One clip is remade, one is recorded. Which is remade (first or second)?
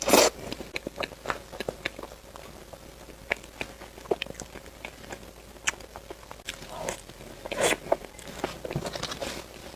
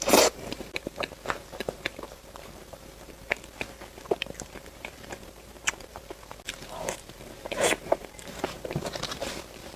second